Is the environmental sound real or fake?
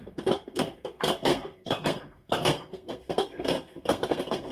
fake